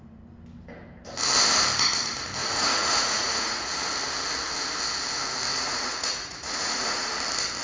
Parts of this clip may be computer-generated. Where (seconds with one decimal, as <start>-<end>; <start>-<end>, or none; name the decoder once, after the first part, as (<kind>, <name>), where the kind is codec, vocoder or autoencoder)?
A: 2.4-3.7 (vocoder, Vocos); 5.5-7.1